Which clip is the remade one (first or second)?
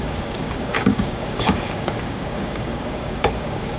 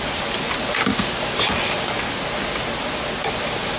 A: first